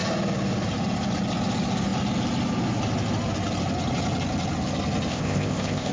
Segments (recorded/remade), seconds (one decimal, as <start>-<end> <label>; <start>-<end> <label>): 0.0-5.1 recorded; 5.1-5.9 remade